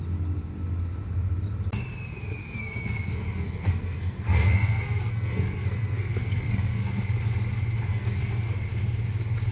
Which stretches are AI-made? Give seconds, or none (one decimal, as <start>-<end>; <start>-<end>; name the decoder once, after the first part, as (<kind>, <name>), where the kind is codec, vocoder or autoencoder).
2.4-6.9 (codec, SNAC); 7.9-8.6